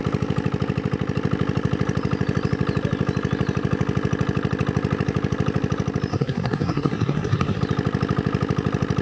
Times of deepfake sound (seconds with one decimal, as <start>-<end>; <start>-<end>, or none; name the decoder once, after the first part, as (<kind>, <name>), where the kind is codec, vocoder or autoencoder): 6.1-7.6 (codec, SNAC)